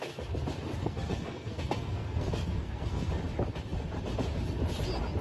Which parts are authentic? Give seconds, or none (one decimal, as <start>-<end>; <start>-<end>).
0.0-0.8; 3.1-5.2